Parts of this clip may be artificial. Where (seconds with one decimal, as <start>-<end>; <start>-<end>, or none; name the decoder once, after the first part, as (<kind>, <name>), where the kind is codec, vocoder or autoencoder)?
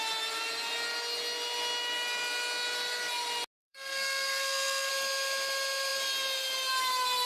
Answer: 3.6-4.9 (codec, SNAC)